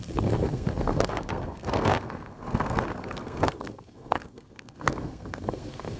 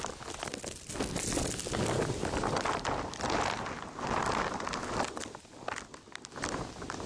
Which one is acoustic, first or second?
second